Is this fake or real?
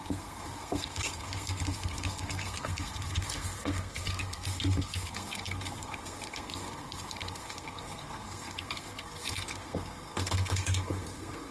fake